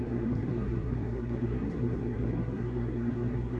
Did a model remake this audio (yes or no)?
yes